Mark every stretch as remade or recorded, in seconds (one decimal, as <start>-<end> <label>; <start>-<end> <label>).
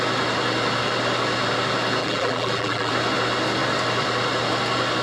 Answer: 0.0-2.0 recorded; 2.0-2.9 remade; 2.9-5.0 recorded